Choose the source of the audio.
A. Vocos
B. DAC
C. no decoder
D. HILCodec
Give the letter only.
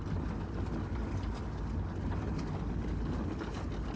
C